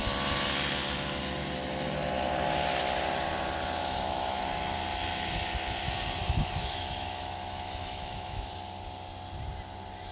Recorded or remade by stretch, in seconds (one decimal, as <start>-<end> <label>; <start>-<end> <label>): 0.0-3.8 recorded; 3.8-4.4 remade; 4.4-6.2 recorded; 6.2-8.5 remade; 8.5-10.1 recorded